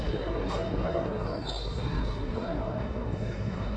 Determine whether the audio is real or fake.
fake